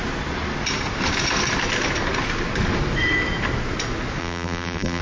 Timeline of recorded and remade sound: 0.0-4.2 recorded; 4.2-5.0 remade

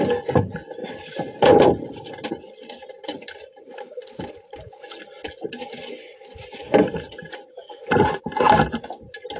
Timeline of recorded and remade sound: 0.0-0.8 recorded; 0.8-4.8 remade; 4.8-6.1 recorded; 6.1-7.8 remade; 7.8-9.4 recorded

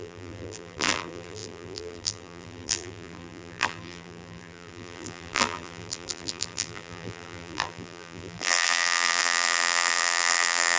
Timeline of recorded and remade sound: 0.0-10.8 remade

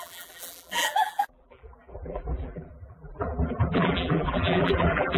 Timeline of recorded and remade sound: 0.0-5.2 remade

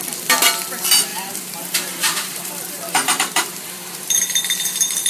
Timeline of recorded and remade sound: 0.0-1.1 recorded; 1.1-4.2 remade; 4.2-5.1 recorded

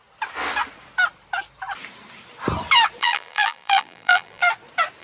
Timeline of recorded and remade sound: 0.0-3.0 recorded; 3.0-4.4 remade; 4.4-5.0 recorded

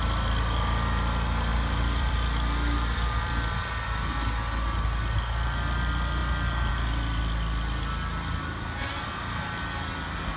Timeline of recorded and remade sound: 0.0-1.5 recorded; 1.5-3.7 remade; 3.7-10.4 recorded

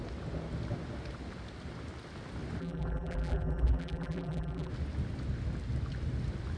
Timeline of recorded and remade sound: 0.0-2.6 recorded; 2.6-4.7 remade; 4.7-6.6 recorded